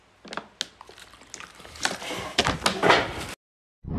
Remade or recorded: recorded